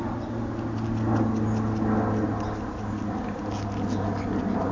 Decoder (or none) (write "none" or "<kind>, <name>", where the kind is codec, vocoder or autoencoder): none